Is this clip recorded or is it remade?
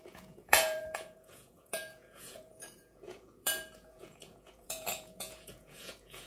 remade